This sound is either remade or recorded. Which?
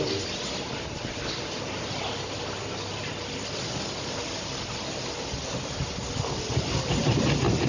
recorded